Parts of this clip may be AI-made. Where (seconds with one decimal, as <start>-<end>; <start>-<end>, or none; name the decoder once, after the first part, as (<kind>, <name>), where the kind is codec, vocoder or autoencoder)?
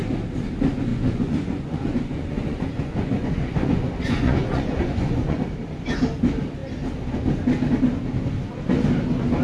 0.9-5.4 (vocoder, Vocos)